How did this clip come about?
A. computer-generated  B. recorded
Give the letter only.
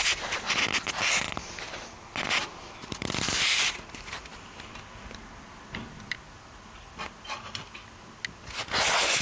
B